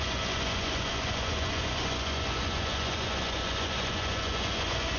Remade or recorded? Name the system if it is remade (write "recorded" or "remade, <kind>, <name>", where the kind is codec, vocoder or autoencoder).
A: remade, vocoder, Vocos